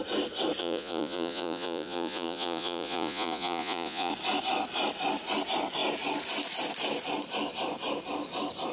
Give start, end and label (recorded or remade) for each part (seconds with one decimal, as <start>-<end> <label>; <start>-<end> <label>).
0.0-0.6 recorded; 0.6-4.1 remade; 4.1-8.7 recorded